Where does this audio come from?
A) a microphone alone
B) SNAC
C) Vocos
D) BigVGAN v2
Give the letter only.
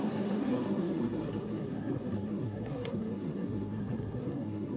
B